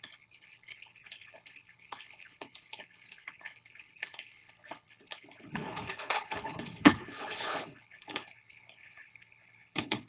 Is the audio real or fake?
fake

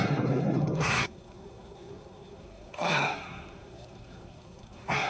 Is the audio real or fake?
fake